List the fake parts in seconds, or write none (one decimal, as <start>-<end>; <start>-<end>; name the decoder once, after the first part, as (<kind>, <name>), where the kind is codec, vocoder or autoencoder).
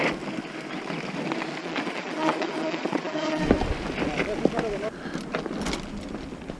1.6-3.4 (vocoder, Vocos)